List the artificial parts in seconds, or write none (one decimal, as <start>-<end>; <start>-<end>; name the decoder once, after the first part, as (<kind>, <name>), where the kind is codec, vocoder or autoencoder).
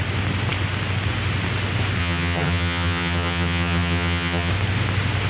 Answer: 2.0-4.5 (vocoder, HiFi-GAN)